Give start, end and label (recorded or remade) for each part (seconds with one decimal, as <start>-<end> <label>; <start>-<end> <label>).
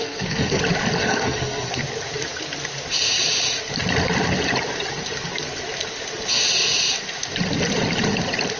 0.0-0.6 remade; 0.6-1.0 recorded; 1.0-1.8 remade; 1.8-8.6 recorded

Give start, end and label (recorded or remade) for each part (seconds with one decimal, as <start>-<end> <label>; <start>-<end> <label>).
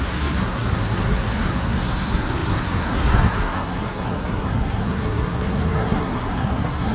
0.0-6.9 remade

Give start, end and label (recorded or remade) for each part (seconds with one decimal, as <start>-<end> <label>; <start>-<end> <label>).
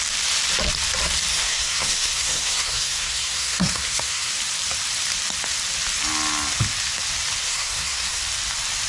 0.0-1.3 recorded; 1.3-4.3 remade; 4.3-7.4 recorded; 7.4-8.2 remade; 8.2-8.9 recorded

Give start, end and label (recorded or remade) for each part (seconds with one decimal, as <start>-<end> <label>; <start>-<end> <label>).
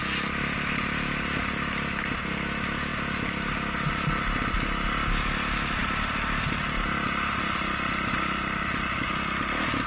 0.0-9.9 recorded